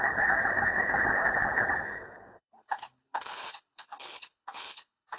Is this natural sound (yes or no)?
no